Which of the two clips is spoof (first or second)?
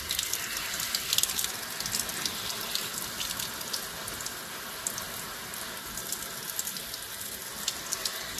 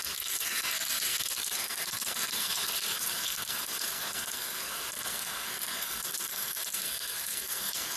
second